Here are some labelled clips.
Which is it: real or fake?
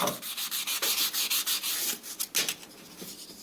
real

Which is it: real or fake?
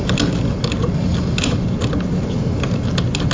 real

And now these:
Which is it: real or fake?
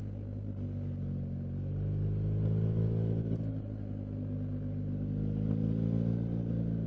real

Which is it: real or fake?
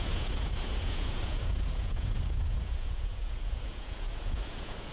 fake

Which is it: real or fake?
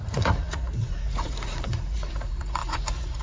fake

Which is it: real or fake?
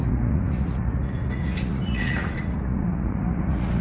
fake